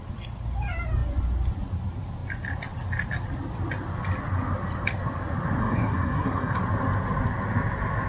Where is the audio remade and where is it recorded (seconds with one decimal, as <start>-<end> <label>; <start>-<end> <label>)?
0.0-5.6 recorded; 5.6-6.6 remade; 6.6-8.1 recorded